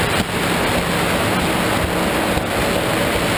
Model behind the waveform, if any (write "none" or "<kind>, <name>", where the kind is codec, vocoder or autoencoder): none